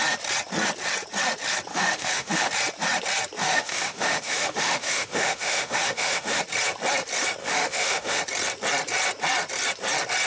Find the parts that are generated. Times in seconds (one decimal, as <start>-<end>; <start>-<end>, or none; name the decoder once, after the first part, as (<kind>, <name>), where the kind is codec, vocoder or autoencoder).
1.7-2.5 (autoencoder, DAC-VAE); 3.4-6.4; 7.4-8.2